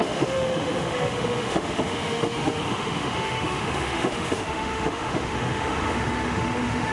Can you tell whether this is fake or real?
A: fake